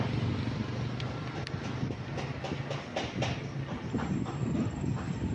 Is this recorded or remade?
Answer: recorded